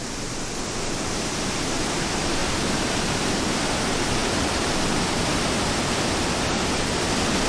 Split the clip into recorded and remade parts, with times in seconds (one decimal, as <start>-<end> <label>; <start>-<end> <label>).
0.0-7.5 recorded